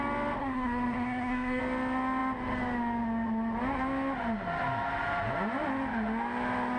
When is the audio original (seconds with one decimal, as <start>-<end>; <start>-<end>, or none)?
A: 0.0-0.4; 1.6-6.8